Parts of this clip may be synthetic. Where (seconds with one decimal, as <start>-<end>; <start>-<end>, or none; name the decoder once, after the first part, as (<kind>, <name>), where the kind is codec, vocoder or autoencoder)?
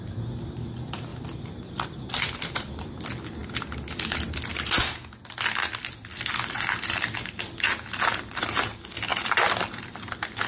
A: none